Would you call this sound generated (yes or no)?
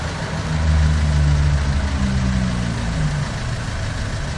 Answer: no